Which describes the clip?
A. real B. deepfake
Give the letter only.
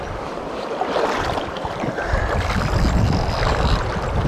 A